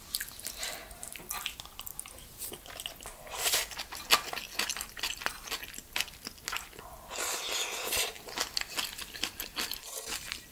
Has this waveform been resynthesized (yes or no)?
no